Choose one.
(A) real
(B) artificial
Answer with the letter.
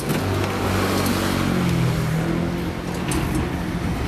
A